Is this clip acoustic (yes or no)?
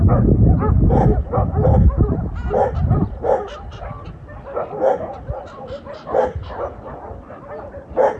yes